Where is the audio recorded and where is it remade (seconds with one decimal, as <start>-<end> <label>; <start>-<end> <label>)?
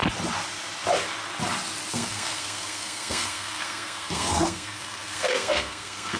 0.0-1.9 recorded; 1.9-6.2 remade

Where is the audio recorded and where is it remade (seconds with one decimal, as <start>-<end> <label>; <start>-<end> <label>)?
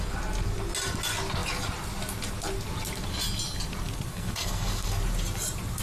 0.0-4.1 recorded; 4.1-5.0 remade; 5.0-5.8 recorded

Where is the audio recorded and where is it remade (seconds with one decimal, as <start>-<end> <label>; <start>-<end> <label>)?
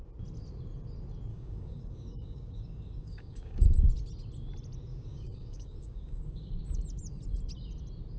0.0-1.3 recorded; 1.3-3.6 remade; 3.6-4.9 recorded; 4.9-6.5 remade; 6.5-8.2 recorded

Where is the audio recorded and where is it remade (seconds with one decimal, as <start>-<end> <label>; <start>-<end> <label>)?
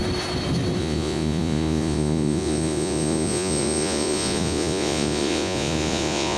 0.0-0.8 recorded; 0.8-6.4 remade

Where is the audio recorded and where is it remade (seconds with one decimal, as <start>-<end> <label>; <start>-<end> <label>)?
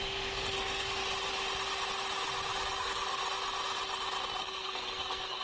0.0-1.0 remade; 1.0-2.8 recorded; 2.8-3.2 remade; 3.2-4.4 recorded; 4.4-5.4 remade